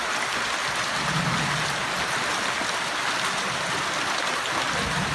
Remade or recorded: recorded